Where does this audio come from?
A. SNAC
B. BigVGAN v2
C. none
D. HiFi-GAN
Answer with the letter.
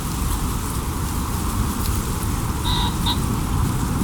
B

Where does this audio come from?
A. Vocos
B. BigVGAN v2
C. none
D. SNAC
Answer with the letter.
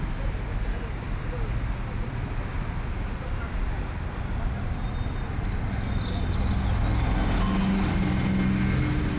C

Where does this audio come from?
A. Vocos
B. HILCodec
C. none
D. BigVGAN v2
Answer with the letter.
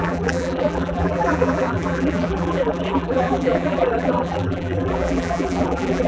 D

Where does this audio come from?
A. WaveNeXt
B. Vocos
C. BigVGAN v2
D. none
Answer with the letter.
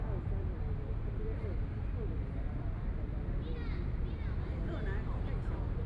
D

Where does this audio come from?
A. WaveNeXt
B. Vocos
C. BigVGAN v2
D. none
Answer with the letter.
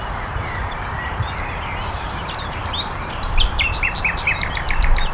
C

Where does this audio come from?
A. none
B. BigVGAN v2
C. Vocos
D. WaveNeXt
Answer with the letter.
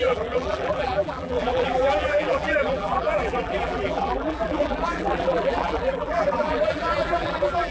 B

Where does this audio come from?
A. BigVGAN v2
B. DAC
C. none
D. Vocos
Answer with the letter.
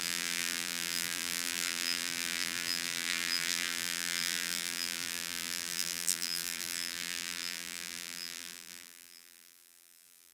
A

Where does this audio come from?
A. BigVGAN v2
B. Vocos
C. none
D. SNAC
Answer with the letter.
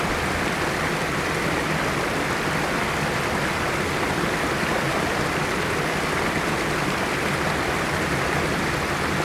C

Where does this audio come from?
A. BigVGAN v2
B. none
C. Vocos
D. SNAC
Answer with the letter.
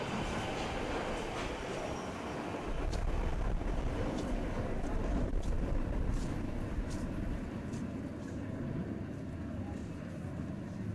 B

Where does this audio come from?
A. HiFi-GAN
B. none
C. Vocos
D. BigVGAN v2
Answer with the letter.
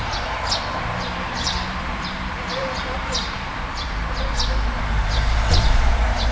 D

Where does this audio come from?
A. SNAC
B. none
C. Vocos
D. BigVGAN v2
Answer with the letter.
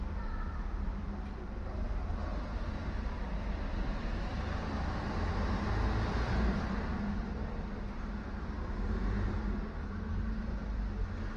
B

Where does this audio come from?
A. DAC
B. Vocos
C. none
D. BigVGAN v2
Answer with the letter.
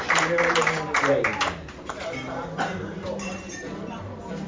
D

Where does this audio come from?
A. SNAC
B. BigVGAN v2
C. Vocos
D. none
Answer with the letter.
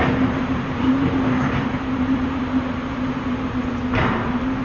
B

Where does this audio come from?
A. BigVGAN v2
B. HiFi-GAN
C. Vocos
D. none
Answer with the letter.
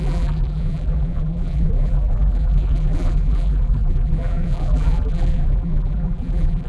A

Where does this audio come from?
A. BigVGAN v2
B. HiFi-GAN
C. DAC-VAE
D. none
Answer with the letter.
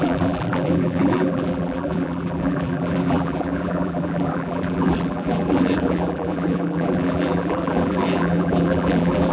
A